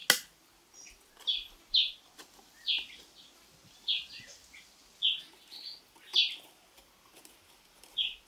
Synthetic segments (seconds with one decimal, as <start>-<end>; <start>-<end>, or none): none